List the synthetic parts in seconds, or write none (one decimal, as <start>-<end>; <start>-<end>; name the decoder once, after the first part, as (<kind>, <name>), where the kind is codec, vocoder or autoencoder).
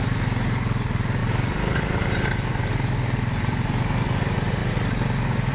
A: none